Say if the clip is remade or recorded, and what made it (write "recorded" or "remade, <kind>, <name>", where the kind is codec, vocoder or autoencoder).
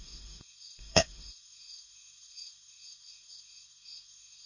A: remade, autoencoder, DAC-VAE